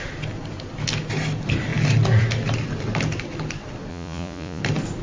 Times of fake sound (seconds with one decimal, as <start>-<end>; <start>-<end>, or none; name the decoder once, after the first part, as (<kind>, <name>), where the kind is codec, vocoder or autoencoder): 3.9-4.6 (vocoder, Vocos)